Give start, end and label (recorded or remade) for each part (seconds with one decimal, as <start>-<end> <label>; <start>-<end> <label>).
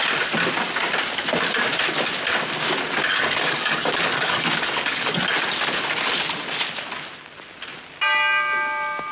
0.0-3.1 recorded; 3.1-5.2 remade; 5.2-9.1 recorded